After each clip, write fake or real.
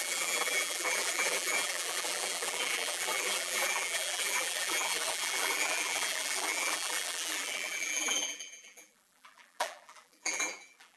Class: fake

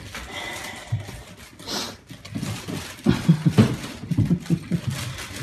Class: real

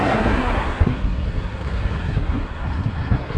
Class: fake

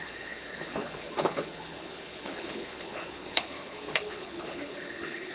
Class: fake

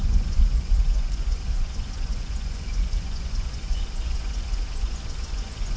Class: fake